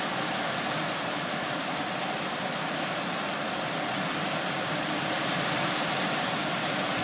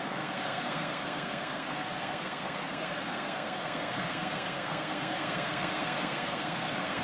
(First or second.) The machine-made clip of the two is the second